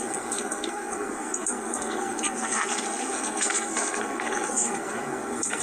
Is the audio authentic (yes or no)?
no